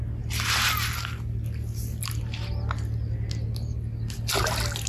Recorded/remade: recorded